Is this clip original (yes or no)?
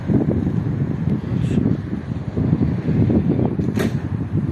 yes